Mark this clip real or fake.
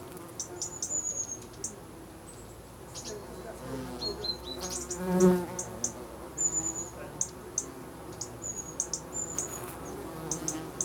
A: real